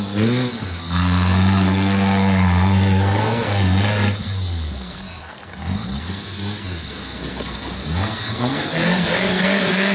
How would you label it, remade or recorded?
remade